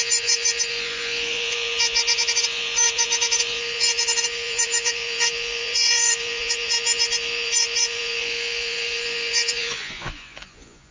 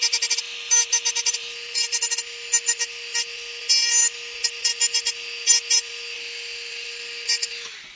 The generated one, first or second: first